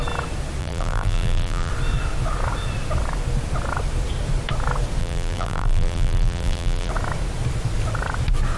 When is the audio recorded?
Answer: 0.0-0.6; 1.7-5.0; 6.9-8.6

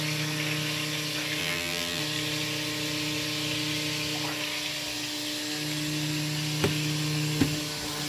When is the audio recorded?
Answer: 0.0-1.4; 2.0-8.1

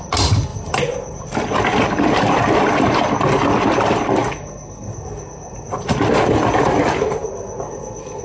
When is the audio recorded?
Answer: 0.0-0.5; 1.3-8.2

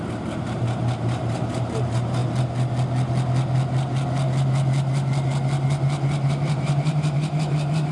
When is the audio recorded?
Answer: 2.2-6.3

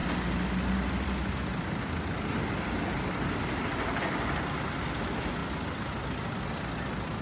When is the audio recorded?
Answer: 0.0-5.4; 6.4-7.2

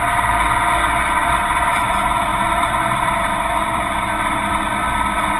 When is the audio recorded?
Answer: 0.0-1.2; 1.9-2.3; 3.3-3.7; 4.7-5.4

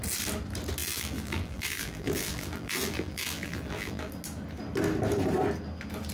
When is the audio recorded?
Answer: 0.0-0.8; 4.1-6.1

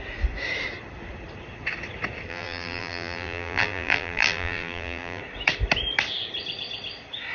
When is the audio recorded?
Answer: 0.0-2.3; 5.2-7.3